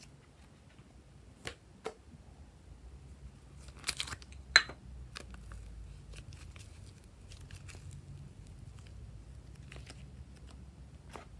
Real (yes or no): yes